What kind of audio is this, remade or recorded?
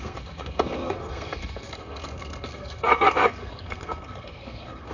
remade